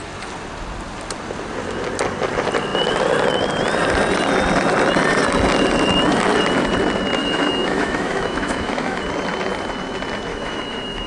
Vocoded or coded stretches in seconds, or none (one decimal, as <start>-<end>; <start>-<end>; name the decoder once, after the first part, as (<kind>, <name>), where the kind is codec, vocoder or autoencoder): 7.2-9.0 (autoencoder, DAC-VAE); 10.3-11.1